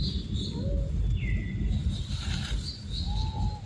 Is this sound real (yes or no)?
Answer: yes